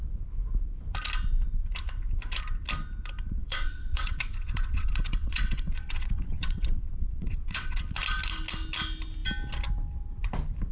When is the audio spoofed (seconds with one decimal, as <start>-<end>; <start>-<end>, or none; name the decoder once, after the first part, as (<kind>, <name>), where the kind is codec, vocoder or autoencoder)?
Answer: 3.4-7.8 (vocoder, WaveNeXt)